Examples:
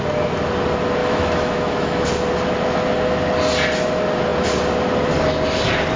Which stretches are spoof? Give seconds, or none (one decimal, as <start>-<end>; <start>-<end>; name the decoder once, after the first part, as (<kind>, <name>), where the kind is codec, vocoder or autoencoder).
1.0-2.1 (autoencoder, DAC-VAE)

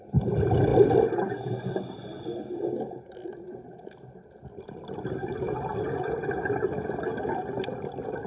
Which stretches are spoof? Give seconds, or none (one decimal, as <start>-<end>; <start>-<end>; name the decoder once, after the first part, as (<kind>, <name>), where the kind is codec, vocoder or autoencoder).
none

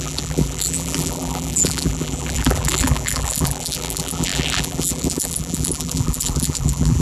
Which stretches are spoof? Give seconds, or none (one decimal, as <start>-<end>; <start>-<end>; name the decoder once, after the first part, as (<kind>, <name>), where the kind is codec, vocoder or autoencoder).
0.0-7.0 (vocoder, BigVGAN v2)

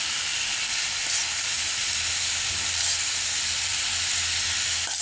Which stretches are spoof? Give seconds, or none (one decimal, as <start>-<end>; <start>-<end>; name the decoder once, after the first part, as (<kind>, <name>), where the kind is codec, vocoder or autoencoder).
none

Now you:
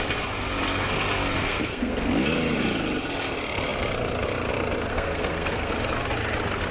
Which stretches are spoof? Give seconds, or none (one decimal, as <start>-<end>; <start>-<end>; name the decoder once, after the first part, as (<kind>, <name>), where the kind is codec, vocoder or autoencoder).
1.4-2.1 (codec, SNAC); 4.9-5.7

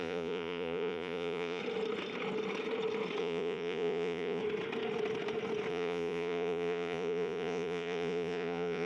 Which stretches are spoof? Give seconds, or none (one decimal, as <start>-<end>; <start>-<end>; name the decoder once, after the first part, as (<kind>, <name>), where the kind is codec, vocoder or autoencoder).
0.0-1.6 (vocoder, Vocos); 3.2-4.4; 5.7-8.9